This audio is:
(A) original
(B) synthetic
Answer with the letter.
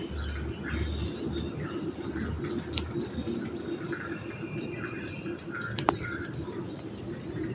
A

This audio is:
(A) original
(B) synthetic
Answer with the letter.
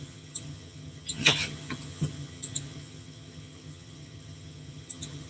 B